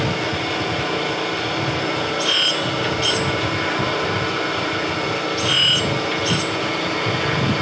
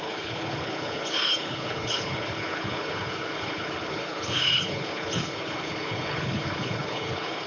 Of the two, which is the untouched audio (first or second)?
first